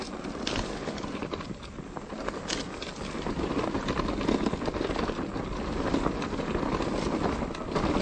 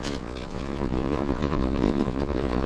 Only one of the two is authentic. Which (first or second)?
first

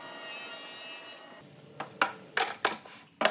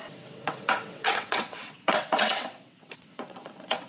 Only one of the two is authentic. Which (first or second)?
first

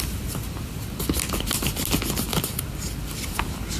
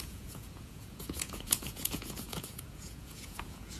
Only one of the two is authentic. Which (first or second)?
first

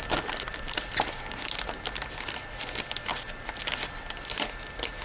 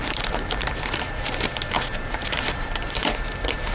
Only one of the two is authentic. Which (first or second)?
first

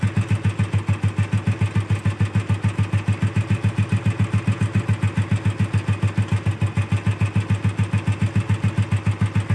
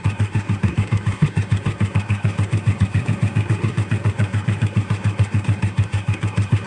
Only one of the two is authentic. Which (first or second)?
first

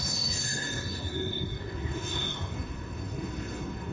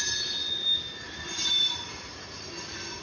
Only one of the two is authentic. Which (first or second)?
second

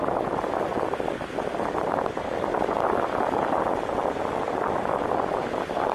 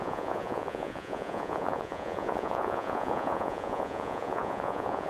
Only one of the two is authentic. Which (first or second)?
first